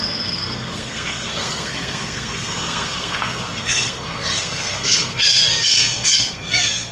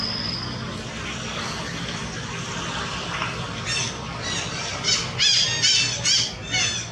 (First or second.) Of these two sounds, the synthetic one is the first